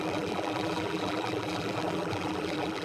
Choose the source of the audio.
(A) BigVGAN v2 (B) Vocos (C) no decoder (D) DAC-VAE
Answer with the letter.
A